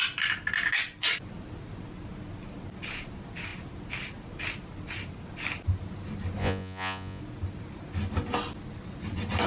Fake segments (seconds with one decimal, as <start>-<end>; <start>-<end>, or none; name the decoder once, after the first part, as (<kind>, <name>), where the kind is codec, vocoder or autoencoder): 6.4-7.2 (vocoder, Vocos)